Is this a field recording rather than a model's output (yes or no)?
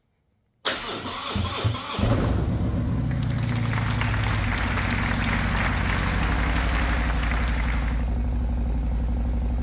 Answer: yes